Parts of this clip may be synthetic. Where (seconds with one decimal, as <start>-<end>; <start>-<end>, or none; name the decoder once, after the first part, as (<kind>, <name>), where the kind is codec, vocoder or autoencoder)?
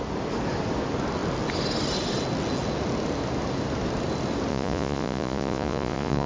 4.5-6.3 (vocoder, Vocos)